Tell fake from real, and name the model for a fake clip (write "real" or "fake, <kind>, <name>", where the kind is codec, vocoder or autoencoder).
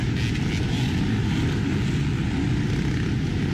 real